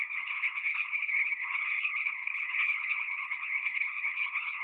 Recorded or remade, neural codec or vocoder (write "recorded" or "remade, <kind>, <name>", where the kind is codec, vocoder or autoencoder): remade, codec, HILCodec